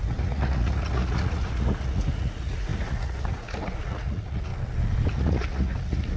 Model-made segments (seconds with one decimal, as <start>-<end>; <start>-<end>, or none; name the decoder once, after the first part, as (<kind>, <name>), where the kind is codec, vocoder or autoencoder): 0.0-4.5 (vocoder, Vocos); 5.1-6.2